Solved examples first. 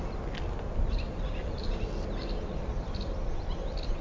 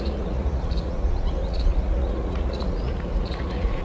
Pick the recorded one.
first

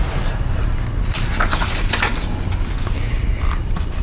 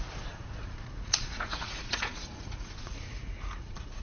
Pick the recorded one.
first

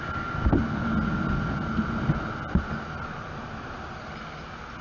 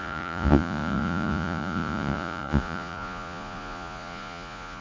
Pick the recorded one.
first